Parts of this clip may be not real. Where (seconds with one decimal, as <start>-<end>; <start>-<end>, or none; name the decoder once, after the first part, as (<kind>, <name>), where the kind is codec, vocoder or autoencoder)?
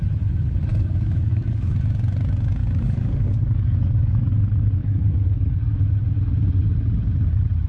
0.7-1.7 (codec, DAC); 2.6-4.3; 4.8-5.7